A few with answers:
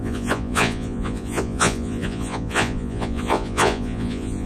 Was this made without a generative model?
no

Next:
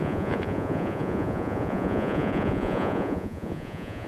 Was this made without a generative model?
no